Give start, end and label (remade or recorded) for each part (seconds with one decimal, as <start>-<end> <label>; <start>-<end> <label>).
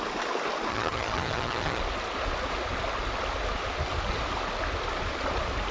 0.0-0.7 recorded; 0.7-1.8 remade; 1.8-5.7 recorded